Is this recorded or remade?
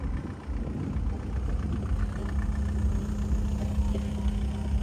recorded